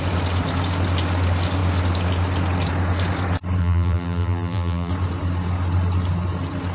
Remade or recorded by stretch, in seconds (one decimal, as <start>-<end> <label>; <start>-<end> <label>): 0.0-3.6 recorded; 3.6-4.9 remade; 4.9-6.7 recorded